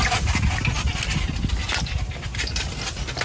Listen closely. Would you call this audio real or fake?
real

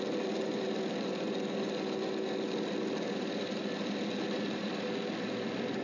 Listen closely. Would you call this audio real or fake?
real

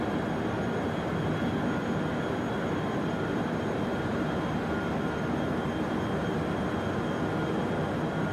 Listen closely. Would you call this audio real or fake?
real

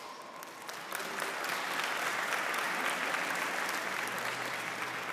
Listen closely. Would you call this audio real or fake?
real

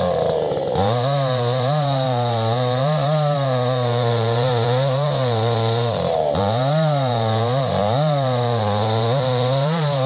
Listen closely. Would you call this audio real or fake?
fake